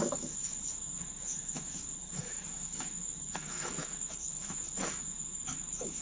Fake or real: fake